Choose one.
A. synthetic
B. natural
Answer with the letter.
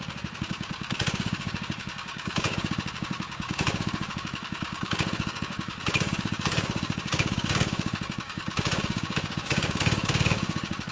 A